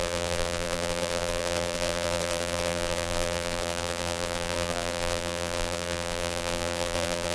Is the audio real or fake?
fake